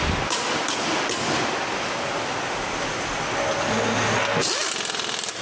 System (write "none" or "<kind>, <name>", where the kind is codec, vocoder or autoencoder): none